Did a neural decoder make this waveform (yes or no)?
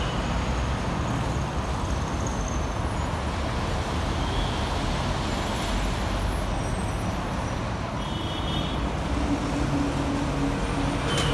no